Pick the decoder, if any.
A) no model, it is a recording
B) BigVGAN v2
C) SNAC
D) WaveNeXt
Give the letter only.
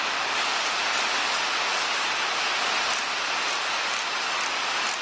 A